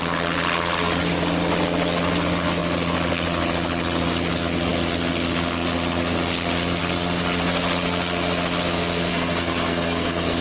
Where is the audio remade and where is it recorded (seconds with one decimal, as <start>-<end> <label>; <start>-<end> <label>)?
0.0-9.1 recorded; 9.1-10.4 remade